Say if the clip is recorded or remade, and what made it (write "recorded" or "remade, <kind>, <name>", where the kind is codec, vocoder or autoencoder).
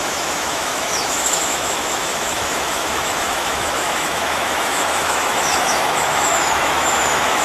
remade, autoencoder, DAC-VAE